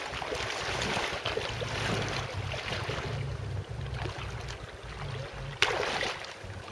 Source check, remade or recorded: recorded